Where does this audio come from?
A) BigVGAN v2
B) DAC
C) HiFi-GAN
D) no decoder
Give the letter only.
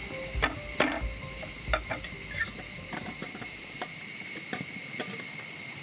D